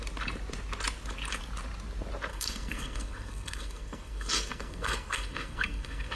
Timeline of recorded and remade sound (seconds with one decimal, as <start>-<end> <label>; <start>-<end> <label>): 0.0-2.3 recorded; 2.3-6.2 remade